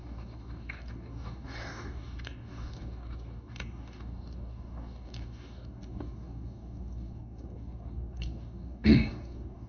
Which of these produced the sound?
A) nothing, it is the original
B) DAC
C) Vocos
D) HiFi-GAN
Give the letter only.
B